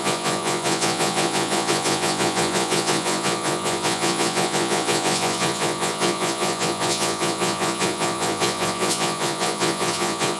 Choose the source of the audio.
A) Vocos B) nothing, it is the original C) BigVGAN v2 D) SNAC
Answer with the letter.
A